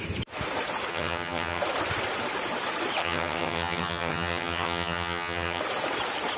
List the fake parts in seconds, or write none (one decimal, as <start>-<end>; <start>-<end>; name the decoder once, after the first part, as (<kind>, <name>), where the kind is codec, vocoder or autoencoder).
0.9-1.6 (vocoder, HiFi-GAN); 3.0-5.6